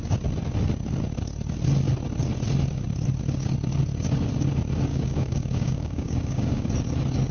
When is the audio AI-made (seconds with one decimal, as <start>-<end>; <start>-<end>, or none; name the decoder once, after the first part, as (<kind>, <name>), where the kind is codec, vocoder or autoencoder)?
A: 4.9-6.7 (codec, DAC)